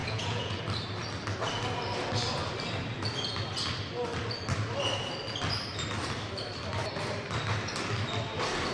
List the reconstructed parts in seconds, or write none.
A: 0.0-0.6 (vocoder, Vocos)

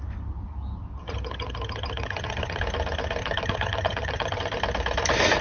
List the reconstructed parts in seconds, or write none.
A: 1.0-2.6 (vocoder, HiFi-GAN); 3.2-4.4

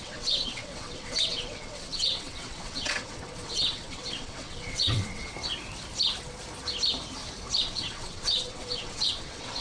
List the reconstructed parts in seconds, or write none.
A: 0.0-5.3 (vocoder, WaveNeXt); 7.6-9.6

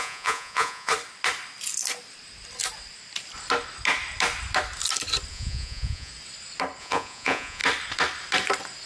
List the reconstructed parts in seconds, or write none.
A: 0.0-0.9 (vocoder, Vocos); 5.3-6.1; 6.8-7.6

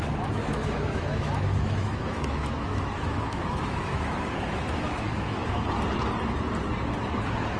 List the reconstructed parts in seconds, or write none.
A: 0.0-5.4 (autoencoder, DAC-VAE)

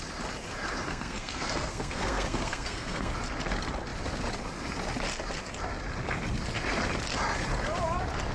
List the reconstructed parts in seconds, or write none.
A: 0.9-3.1 (codec, SNAC)